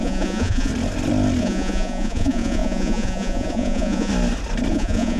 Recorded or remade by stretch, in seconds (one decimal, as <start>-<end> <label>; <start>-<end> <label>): 0.0-0.7 remade; 0.7-1.4 recorded; 1.4-4.1 remade; 4.1-4.7 recorded; 4.7-5.2 remade